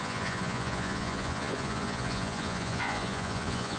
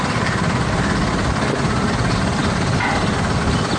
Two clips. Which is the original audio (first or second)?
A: second